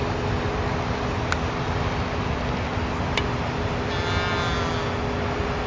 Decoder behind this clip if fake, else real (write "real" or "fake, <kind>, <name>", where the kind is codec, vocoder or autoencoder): real